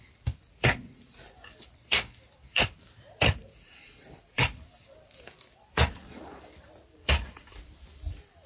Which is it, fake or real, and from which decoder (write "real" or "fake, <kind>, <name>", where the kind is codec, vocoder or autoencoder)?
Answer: fake, vocoder, BigVGAN v2